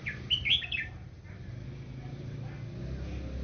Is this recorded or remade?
recorded